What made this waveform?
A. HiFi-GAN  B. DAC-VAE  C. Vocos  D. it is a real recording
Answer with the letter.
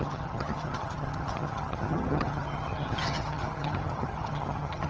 A